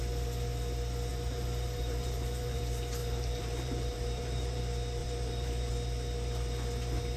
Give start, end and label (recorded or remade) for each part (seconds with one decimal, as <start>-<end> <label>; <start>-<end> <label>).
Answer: 0.0-1.1 recorded; 1.1-2.6 remade; 2.6-3.0 recorded; 3.0-4.6 remade; 4.6-5.0 recorded; 5.0-5.7 remade; 5.7-7.2 recorded